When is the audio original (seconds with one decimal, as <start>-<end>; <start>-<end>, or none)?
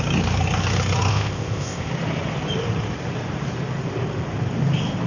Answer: 0.0-1.1; 1.9-5.1